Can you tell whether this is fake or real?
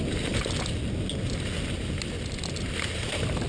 real